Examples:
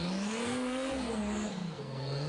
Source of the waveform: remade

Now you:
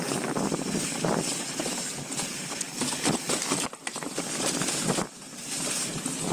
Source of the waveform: recorded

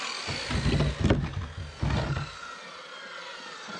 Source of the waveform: recorded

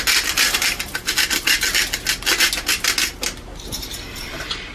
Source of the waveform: recorded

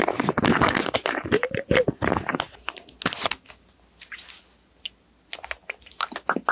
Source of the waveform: recorded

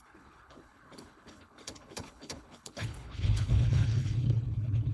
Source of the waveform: remade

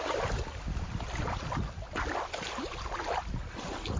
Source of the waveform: recorded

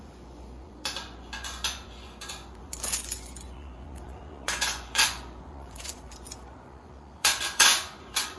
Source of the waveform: remade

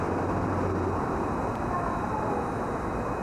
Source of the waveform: recorded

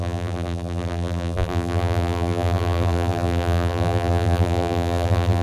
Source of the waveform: remade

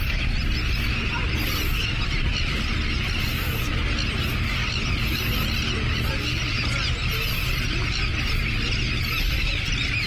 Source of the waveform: recorded